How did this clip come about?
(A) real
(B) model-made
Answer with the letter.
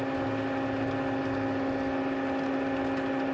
A